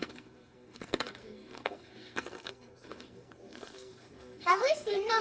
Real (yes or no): no